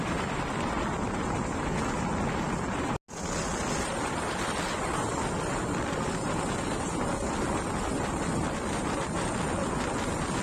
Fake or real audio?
real